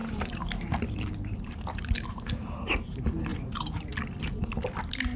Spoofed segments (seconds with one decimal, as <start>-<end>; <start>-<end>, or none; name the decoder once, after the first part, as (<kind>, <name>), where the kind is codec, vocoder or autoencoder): 0.0-1.9 (vocoder, BigVGAN v2); 3.3-3.9